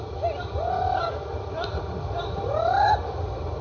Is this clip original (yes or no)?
yes